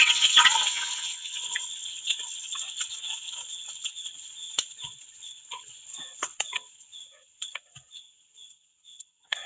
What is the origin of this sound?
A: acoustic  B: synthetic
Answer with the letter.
B